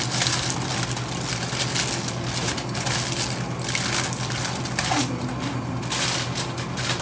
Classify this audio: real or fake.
real